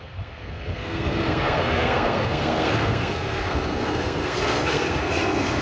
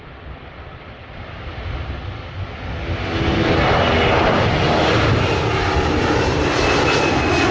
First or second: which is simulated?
first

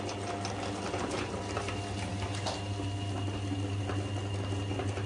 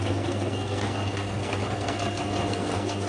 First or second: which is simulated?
second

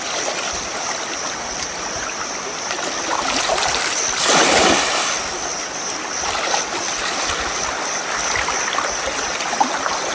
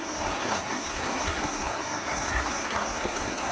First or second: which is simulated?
second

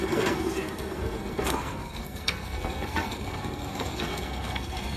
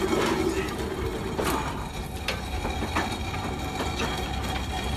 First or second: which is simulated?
first